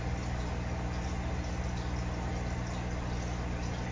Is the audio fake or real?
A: real